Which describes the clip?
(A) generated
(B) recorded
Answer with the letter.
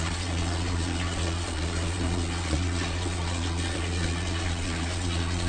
A